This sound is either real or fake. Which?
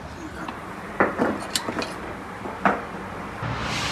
real